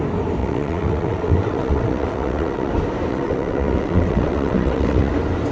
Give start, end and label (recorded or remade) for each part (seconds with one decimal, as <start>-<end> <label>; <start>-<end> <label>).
0.0-0.4 recorded; 0.4-2.7 remade; 2.7-3.1 recorded; 3.1-5.1 remade; 5.1-5.5 recorded